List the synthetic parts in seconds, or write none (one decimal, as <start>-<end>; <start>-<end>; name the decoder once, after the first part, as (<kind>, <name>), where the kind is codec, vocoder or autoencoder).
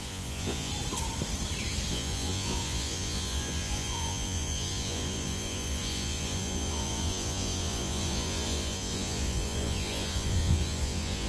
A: 0.0-0.7 (vocoder, Vocos); 1.9-11.3